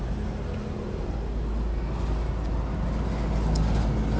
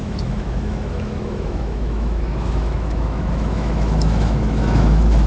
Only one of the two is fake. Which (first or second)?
second